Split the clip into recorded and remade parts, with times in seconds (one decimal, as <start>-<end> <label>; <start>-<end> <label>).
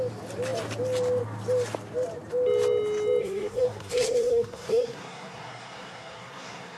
0.0-3.2 recorded; 3.2-6.8 remade